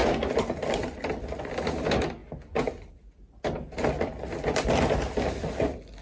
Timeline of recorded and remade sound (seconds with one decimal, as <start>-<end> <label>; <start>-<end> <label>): 0.0-6.0 recorded